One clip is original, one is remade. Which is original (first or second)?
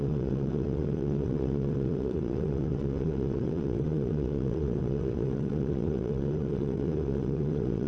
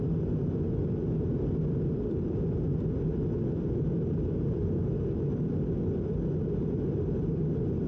second